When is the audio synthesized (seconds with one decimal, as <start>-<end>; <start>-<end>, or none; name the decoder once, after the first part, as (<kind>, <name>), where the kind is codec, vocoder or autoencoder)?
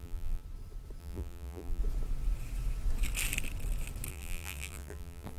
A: 0.0-0.4 (vocoder, BigVGAN v2); 1.0-1.8; 4.1-5.4